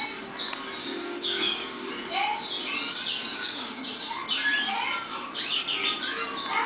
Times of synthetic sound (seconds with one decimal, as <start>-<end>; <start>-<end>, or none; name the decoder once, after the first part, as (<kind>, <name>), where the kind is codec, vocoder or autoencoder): 0.8-1.9 (codec, DAC); 3.3-3.8

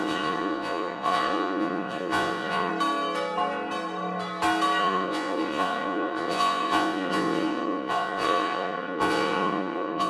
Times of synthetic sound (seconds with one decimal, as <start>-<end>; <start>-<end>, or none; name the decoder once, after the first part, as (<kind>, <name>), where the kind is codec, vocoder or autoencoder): 0.0-2.7 (vocoder, Vocos); 4.8-10.1

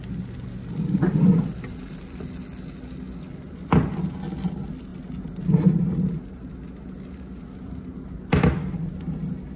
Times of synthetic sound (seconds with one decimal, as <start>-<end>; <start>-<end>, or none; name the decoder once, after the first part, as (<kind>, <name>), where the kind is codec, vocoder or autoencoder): none